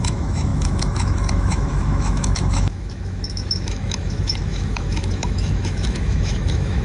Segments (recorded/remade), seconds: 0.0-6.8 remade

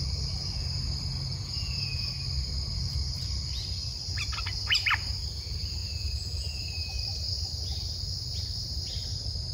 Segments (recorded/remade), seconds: 0.0-1.3 recorded; 1.3-2.1 remade; 2.1-5.8 recorded; 5.8-6.6 remade; 6.6-9.5 recorded